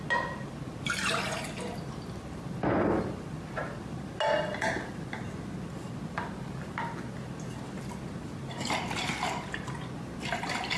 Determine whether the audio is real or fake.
real